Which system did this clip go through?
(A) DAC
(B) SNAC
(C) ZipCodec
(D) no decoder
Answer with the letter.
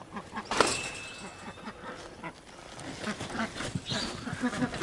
D